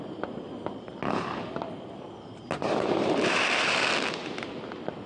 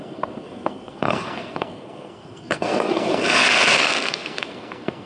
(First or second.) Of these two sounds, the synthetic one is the second